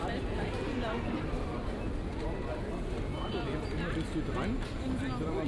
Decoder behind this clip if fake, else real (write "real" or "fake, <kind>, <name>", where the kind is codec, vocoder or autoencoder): real